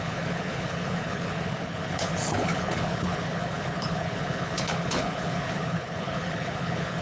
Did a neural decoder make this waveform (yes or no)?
yes